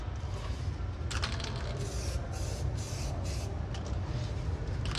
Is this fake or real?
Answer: real